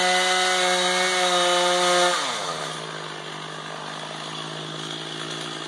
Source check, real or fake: real